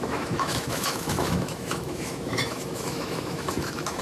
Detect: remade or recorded remade